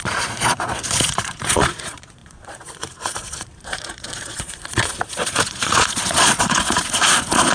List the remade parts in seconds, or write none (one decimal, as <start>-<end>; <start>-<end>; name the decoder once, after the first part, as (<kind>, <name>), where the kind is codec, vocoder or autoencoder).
0.0-7.5 (vocoder, Vocos)